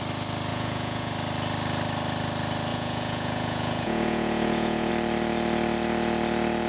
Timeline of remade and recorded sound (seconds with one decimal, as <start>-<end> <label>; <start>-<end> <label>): 0.0-0.5 recorded; 0.5-1.1 remade; 1.1-2.7 recorded; 2.7-4.9 remade; 4.9-6.7 recorded